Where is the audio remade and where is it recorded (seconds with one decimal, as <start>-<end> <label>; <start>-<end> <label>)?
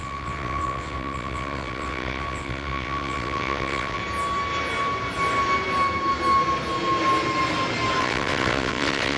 0.0-4.0 remade; 4.0-8.0 recorded; 8.0-9.2 remade